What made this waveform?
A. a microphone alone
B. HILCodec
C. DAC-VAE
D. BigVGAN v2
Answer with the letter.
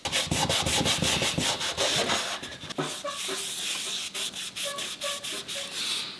A